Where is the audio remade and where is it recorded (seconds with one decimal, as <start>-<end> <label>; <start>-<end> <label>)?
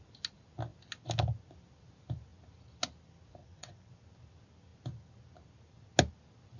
0.0-3.4 recorded; 3.4-3.9 remade; 3.9-6.6 recorded